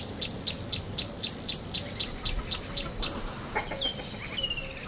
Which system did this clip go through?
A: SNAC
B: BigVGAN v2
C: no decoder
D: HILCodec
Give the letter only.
C